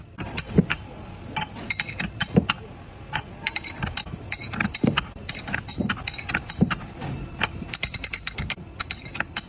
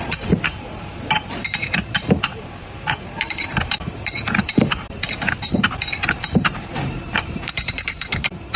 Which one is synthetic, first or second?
second